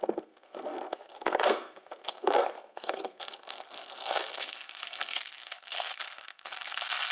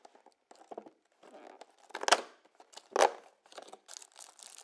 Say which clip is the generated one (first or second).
first